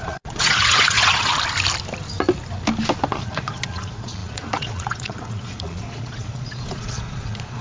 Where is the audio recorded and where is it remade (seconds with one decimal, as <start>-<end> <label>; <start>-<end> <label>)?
0.0-1.3 remade; 1.3-3.1 recorded; 3.1-7.6 remade